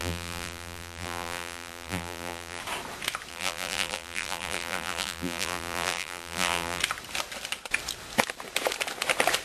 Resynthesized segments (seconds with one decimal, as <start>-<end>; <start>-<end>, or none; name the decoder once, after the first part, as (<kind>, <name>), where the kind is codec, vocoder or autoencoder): 0.0-2.6 (vocoder, BigVGAN v2); 3.3-6.8